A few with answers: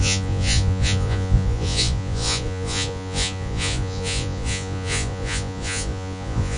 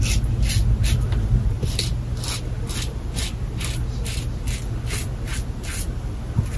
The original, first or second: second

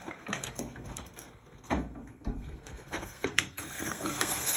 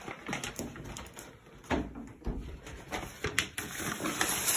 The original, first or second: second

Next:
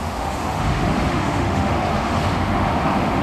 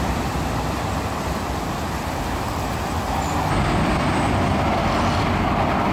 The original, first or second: second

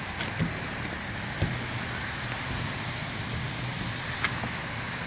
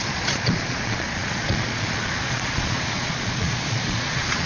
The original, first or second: first